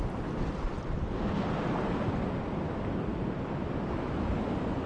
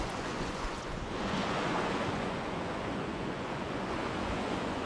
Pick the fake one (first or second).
second